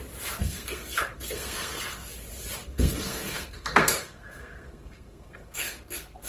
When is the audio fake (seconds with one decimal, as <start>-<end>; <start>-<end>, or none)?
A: 0.4-2.1; 2.6-6.3